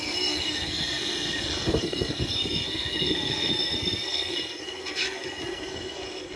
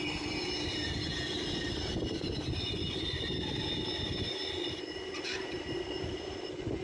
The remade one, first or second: first